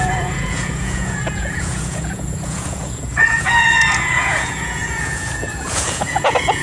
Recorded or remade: remade